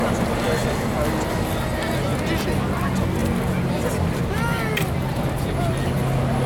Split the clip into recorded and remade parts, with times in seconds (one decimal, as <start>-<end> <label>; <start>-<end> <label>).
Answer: 0.0-6.5 recorded